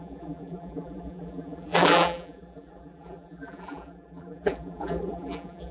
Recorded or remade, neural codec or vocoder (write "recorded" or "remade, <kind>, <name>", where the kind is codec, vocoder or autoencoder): remade, vocoder, BigVGAN v2